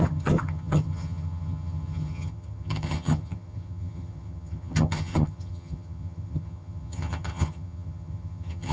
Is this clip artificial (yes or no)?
yes